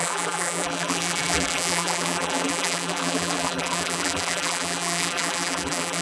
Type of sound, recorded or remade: remade